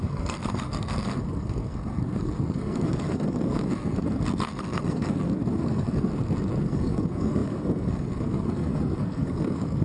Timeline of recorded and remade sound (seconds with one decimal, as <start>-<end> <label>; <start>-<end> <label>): 0.0-6.1 remade; 6.1-6.6 recorded; 6.6-9.8 remade